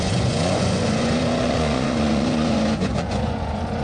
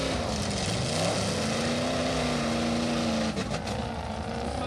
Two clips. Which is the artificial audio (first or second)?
first